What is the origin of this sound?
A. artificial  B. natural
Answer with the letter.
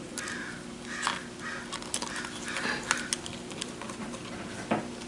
B